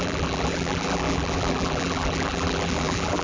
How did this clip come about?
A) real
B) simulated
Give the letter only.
B